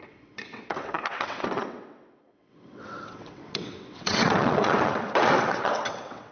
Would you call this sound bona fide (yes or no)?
no